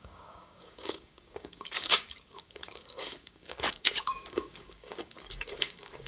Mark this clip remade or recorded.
remade